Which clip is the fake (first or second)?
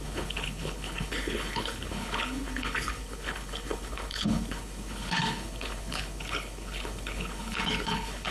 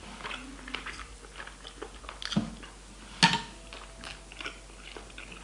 first